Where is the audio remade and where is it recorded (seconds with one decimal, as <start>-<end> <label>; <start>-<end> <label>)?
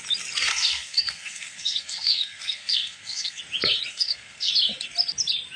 0.0-0.5 recorded; 0.5-3.4 remade; 3.4-3.9 recorded; 3.9-4.5 remade; 4.5-5.6 recorded